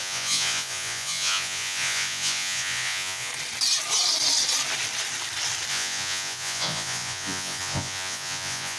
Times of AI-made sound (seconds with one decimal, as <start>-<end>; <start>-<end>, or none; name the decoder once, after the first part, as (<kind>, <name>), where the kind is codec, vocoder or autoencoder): 0.0-3.3 (vocoder, Vocos); 5.7-8.8